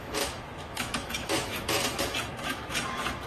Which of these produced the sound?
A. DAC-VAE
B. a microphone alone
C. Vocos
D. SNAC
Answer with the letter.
A